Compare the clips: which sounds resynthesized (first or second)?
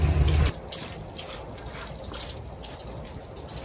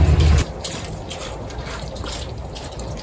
second